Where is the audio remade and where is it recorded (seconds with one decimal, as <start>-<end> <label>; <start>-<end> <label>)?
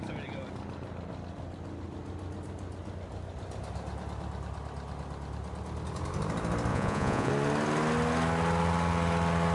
0.0-6.7 recorded; 6.7-7.3 remade; 7.3-9.5 recorded